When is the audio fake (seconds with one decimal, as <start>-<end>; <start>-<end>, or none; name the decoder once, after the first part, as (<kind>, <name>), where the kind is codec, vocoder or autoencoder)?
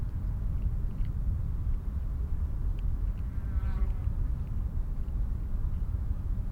0.0-6.5 (vocoder, BigVGAN v2)